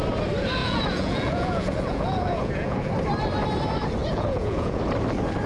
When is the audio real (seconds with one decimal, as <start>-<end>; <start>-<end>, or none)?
0.0-0.6; 2.9-4.0; 4.8-5.5